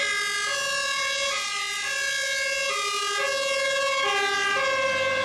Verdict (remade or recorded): recorded